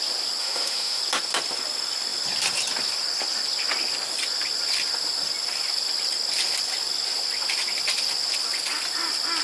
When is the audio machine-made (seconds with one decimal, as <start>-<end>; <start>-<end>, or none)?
0.4-1.0